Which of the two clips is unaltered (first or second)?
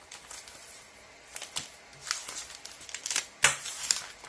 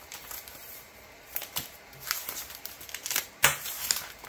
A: first